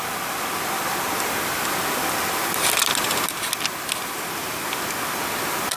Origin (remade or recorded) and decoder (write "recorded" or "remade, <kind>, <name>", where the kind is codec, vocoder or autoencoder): recorded